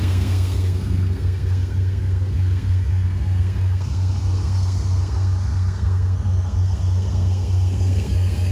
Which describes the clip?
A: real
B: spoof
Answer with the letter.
B